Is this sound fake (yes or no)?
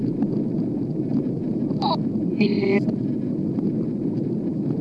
no